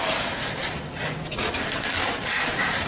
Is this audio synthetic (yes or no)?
yes